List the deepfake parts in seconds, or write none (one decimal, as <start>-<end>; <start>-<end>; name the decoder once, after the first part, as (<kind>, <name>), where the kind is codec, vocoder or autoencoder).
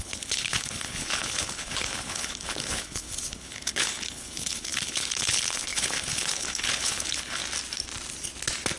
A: 0.0-7.4 (codec, HILCodec)